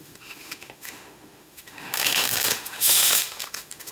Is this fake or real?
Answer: fake